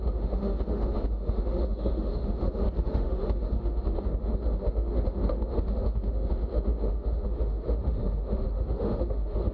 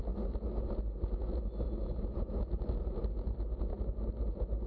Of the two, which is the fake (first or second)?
first